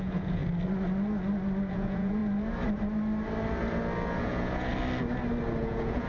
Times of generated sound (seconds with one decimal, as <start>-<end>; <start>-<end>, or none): 0.0-0.4; 1.7-2.2; 4.2-4.7; 5.6-6.1

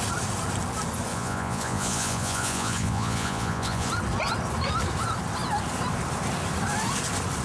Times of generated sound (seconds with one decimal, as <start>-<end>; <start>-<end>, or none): 1.1-3.9

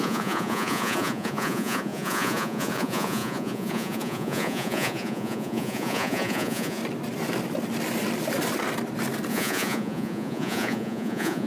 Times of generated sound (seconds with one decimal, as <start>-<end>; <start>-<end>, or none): 0.0-6.8; 9.3-11.5

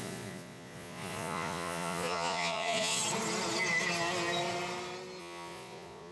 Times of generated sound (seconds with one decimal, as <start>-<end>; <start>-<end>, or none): 0.0-3.0; 5.2-6.1

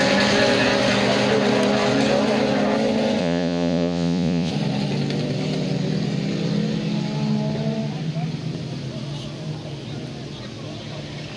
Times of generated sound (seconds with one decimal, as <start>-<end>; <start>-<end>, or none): 3.2-4.5

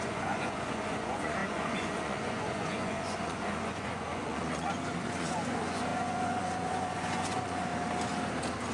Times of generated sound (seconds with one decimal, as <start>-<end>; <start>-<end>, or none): 0.0-7.7